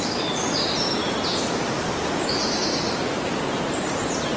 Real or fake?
real